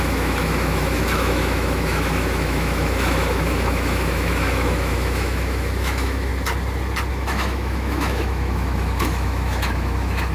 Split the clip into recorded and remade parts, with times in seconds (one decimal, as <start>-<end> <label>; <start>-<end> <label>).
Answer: 0.0-6.3 remade; 6.3-7.1 recorded; 7.1-10.3 remade